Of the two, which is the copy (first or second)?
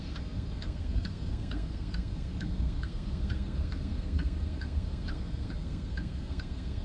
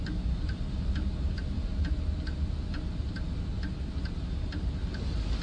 first